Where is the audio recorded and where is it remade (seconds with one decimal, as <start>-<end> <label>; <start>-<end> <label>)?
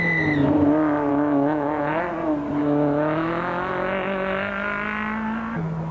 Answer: 0.0-1.1 recorded; 1.1-2.0 remade; 2.0-2.6 recorded; 2.6-4.5 remade; 4.5-5.9 recorded